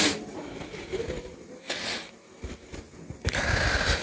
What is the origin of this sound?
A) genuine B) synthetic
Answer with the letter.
A